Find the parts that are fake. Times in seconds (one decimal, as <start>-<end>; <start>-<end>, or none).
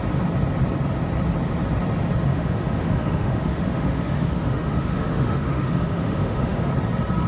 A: 2.3-6.7